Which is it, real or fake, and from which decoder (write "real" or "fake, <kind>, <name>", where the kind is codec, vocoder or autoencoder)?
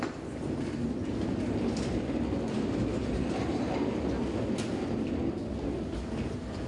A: real